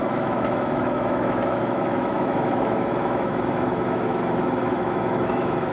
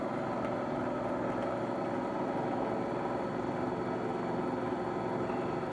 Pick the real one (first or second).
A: second